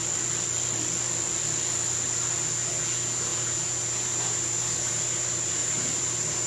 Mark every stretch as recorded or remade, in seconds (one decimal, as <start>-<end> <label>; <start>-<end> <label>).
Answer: 0.0-5.6 recorded; 5.6-6.5 remade